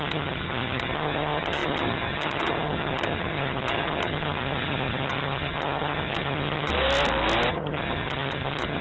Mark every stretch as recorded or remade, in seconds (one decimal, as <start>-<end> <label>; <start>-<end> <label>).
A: 0.0-6.7 remade; 6.7-7.5 recorded; 7.5-8.8 remade